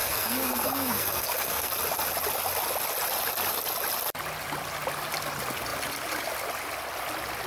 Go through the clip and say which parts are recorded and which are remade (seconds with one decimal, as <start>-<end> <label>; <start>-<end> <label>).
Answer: 0.0-1.7 remade; 1.7-7.5 recorded